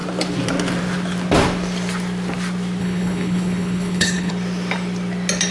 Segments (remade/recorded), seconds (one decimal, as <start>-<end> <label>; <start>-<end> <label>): 0.0-2.8 recorded; 2.8-4.3 remade; 4.3-5.5 recorded